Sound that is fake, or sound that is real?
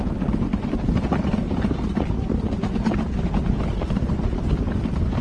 real